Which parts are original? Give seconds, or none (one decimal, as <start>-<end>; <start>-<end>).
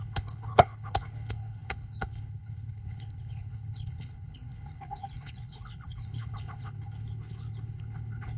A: none